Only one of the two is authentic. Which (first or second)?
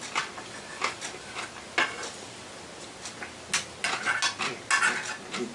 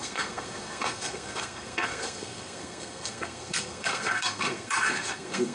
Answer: first